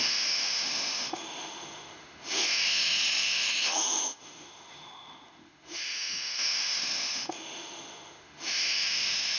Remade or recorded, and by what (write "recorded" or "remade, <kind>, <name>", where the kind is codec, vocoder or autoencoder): remade, autoencoder, DAC-VAE